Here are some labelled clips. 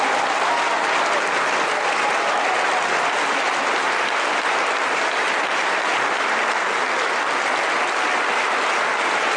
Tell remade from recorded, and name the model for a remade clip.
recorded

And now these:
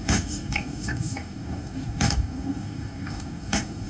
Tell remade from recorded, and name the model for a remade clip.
remade, codec, DAC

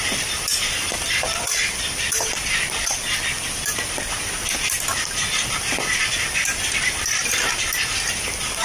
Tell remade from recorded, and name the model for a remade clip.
remade, vocoder, BigVGAN v2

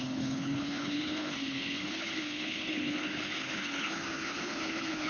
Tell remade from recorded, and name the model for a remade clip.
remade, codec, HILCodec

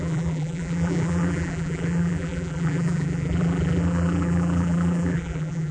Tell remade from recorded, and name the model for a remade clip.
remade, vocoder, BigVGAN v2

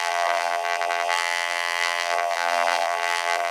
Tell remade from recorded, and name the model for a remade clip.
remade, vocoder, BigVGAN v2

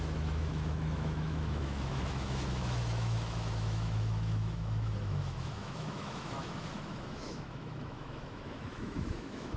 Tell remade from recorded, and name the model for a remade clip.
remade, autoencoder, DAC-VAE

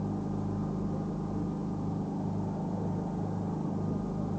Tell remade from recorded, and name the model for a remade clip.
recorded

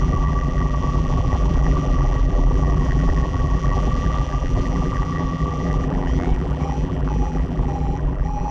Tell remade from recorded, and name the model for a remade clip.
remade, vocoder, BigVGAN v2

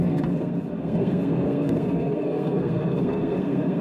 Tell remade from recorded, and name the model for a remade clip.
remade, codec, SNAC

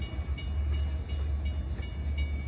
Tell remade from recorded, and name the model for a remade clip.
recorded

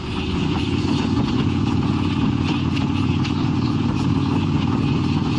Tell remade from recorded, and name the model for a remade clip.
remade, vocoder, Vocos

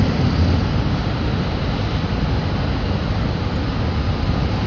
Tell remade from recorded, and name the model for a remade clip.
recorded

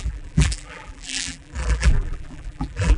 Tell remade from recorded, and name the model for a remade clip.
remade, vocoder, BigVGAN v2